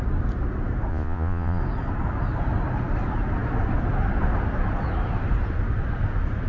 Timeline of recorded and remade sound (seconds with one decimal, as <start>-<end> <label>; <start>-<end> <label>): 0.0-0.9 recorded; 0.9-1.6 remade; 1.6-6.5 recorded